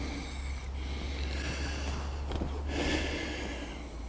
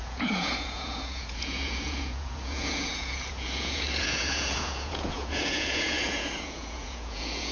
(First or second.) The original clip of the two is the first